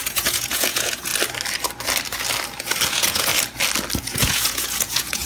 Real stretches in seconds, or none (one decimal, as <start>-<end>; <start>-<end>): 1.1-2.9; 3.3-4.0